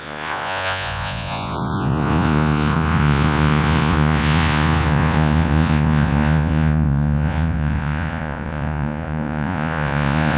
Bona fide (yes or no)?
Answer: no